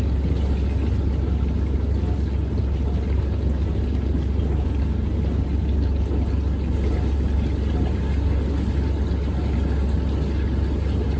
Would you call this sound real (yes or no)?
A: yes